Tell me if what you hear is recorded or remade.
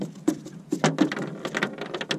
recorded